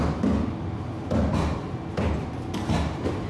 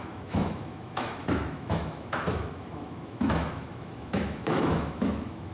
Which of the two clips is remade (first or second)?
second